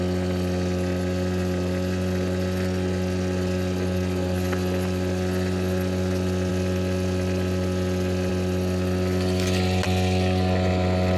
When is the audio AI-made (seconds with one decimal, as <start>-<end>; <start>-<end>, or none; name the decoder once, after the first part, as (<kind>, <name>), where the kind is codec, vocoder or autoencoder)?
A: none